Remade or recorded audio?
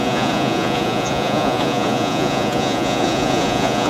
remade